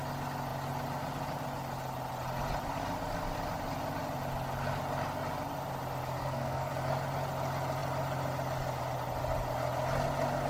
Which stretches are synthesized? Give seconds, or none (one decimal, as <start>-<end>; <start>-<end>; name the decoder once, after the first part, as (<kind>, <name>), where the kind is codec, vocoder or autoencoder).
6.2-6.7 (codec, SNAC)

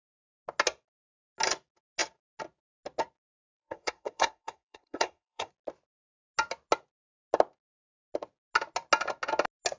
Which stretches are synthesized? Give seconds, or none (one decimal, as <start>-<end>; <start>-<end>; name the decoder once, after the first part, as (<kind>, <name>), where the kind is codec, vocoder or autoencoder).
3.5-5.5 (codec, SNAC)

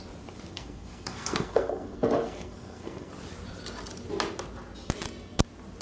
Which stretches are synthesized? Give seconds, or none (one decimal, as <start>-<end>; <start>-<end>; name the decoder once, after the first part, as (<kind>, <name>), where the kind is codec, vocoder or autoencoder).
0.5-3.1 (codec, SNAC)

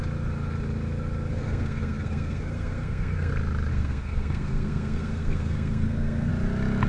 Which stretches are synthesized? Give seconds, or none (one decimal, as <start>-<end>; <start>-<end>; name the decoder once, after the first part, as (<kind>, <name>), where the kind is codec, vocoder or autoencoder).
1.3-3.3 (codec, SNAC); 3.7-6.3

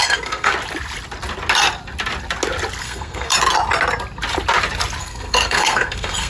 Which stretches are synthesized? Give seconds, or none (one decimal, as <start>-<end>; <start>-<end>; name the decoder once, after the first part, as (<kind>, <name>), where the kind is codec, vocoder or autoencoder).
0.0-0.5 (codec, SNAC); 2.8-3.3; 5.0-6.3

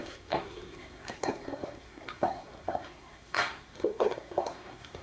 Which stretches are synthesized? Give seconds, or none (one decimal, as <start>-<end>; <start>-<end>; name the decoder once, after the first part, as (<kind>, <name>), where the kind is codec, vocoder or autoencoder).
0.0-5.0 (codec, SNAC)